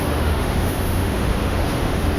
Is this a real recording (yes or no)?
no